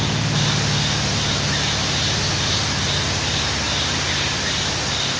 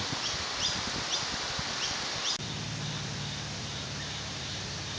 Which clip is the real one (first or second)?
first